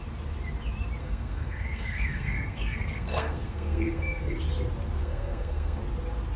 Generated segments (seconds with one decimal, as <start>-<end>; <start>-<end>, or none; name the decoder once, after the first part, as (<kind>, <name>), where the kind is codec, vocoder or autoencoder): 1.0-4.4 (codec, SNAC); 5.0-5.8